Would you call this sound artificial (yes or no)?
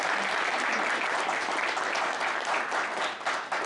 no